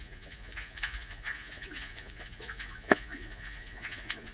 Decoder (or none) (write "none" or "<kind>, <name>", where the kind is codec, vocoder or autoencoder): vocoder, Vocos